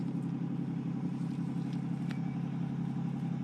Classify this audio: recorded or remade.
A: remade